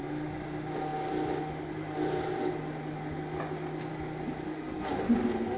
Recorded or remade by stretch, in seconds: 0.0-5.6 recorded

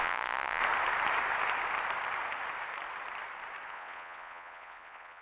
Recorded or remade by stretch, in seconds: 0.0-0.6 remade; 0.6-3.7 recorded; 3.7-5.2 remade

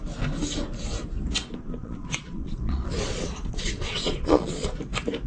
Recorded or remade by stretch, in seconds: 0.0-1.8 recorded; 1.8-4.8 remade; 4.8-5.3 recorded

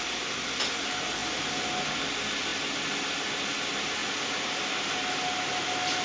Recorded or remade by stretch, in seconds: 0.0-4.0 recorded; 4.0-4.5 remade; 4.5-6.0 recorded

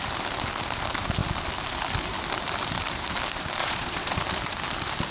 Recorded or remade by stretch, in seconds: 0.0-3.6 recorded; 3.6-4.2 remade; 4.2-5.1 recorded